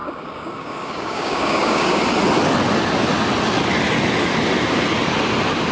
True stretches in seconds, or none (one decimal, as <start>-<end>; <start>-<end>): 2.0-5.7